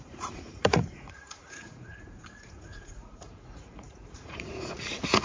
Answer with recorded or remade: remade